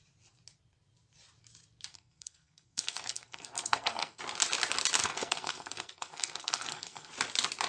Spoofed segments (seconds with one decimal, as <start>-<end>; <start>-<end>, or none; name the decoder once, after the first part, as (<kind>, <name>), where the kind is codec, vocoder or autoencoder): 1.9-4.2 (codec, SNAC); 5.0-7.1